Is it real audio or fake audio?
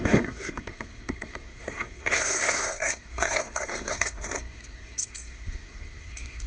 fake